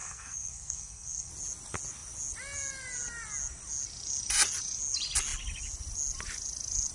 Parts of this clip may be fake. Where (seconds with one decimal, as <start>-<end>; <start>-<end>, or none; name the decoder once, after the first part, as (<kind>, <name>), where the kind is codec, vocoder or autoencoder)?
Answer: 0.0-1.3 (codec, SNAC)